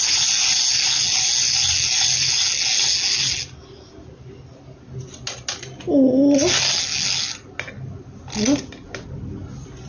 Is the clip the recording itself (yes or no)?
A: yes